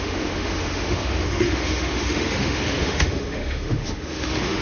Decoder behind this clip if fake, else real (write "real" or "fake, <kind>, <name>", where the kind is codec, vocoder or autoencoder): fake, autoencoder, DAC-VAE